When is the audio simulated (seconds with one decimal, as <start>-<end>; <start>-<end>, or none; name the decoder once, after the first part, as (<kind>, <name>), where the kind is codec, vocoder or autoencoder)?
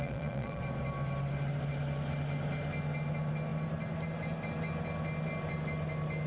0.0-0.6 (vocoder, Vocos)